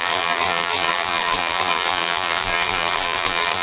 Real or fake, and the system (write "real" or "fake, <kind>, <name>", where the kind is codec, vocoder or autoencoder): fake, vocoder, BigVGAN v2